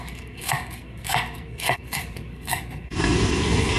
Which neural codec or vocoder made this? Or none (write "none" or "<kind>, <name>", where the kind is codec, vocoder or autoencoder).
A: codec, SNAC